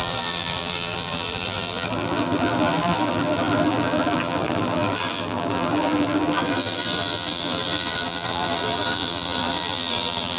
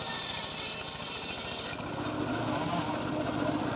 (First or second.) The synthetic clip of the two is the first